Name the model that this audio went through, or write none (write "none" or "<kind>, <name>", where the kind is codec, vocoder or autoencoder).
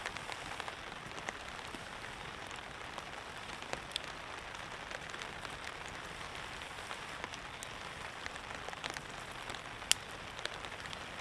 none